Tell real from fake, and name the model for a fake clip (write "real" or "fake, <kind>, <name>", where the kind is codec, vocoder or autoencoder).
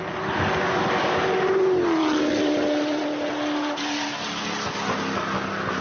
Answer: real